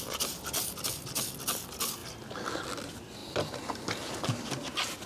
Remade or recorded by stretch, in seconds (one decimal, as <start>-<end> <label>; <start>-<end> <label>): 0.0-5.1 recorded